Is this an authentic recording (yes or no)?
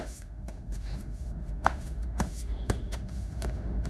no